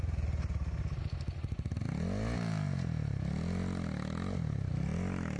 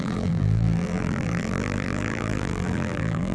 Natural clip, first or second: first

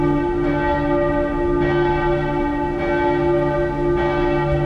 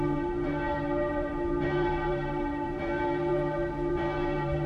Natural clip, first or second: first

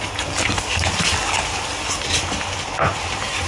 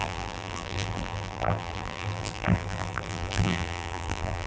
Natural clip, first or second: first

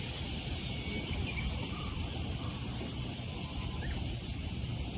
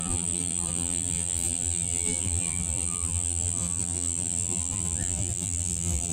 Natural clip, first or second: first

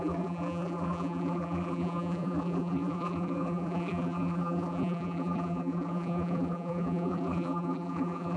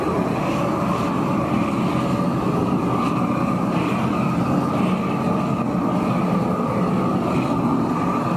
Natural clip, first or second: second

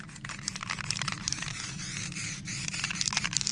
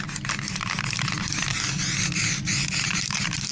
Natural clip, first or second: second